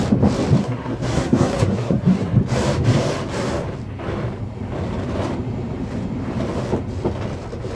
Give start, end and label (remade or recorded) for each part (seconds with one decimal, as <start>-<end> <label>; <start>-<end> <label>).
0.0-0.6 recorded; 0.6-2.4 remade; 2.4-7.7 recorded